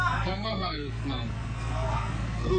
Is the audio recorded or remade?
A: remade